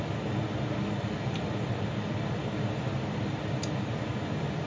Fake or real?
real